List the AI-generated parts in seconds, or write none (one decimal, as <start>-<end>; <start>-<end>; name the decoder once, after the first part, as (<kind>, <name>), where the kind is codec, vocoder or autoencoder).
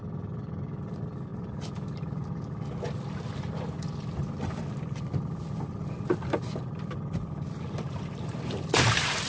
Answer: 0.0-1.3 (vocoder, BigVGAN v2); 6.1-9.3